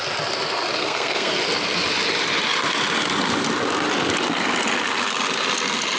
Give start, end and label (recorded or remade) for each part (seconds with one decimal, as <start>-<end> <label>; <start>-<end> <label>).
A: 0.0-0.8 recorded; 0.8-1.3 remade; 1.3-6.0 recorded